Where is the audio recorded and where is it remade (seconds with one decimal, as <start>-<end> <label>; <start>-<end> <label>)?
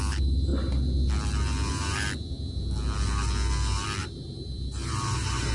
0.0-4.0 recorded; 4.0-5.5 remade